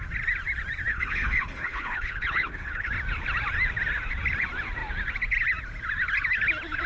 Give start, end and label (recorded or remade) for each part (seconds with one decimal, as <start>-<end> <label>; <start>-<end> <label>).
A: 0.0-0.9 recorded; 0.9-2.9 remade; 2.9-6.9 recorded